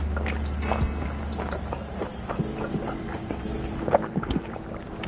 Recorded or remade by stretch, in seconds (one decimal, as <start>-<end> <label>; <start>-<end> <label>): 0.0-4.0 recorded; 4.0-4.5 remade; 4.5-5.1 recorded